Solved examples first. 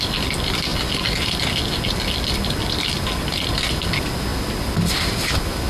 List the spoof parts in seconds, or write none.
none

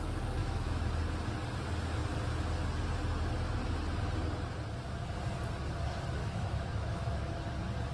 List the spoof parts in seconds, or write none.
0.4-0.9 (autoencoder, DAC-VAE); 6.2-7.3